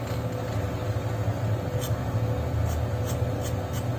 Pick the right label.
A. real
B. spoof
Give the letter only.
A